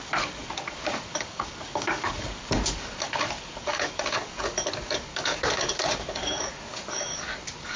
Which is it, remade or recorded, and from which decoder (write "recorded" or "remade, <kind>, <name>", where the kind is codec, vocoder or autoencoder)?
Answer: remade, codec, DAC